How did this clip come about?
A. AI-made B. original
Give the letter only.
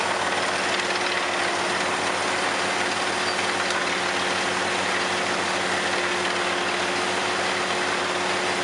B